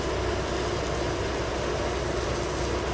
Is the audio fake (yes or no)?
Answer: no